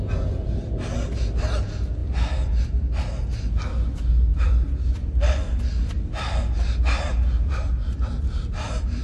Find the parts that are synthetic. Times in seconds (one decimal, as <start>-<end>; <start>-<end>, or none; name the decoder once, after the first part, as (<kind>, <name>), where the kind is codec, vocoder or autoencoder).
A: 4.3-5.6 (vocoder, BigVGAN v2)